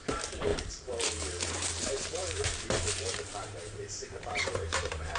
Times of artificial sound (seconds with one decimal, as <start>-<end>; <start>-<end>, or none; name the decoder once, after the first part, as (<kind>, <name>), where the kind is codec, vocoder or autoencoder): 0.0-5.2 (vocoder, BigVGAN v2)